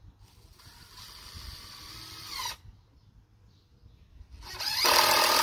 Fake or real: real